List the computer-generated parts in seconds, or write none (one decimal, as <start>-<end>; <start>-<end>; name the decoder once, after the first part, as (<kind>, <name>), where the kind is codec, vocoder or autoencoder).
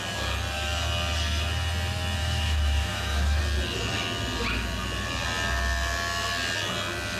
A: 2.2-3.4 (autoencoder, DAC-VAE)